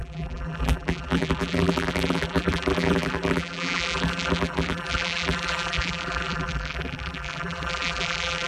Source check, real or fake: fake